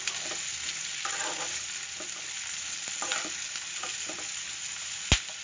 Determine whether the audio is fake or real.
real